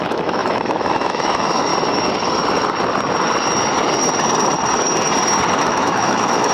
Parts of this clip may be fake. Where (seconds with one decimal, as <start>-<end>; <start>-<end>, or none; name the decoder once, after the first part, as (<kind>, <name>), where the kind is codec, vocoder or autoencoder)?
0.0-1.7 (autoencoder, DAC-VAE); 5.6-6.5